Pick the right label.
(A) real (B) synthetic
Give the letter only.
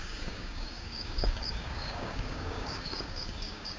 B